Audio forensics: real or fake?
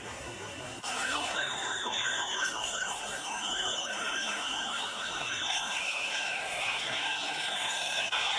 fake